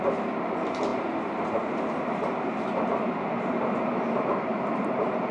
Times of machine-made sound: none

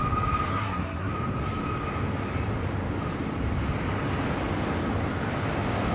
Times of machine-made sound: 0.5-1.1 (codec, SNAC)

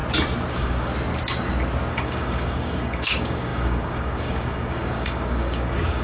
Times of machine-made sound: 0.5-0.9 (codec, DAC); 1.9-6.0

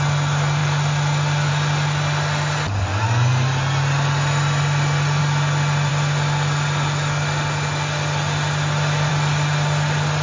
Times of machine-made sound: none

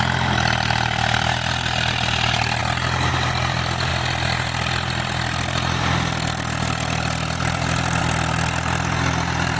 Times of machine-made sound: 0.0-9.6 (vocoder, BigVGAN v2)

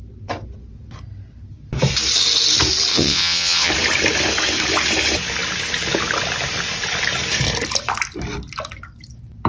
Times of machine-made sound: 2.9-3.7 (vocoder, WaveNeXt)

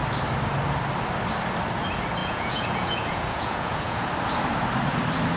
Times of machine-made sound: 2.2-4.1 (vocoder, Vocos)

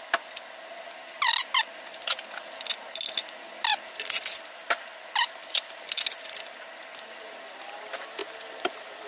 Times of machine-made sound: none